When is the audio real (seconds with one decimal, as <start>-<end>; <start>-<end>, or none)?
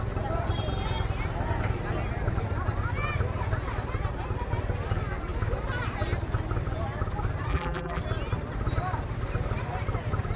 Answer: 0.0-7.5; 8.0-10.4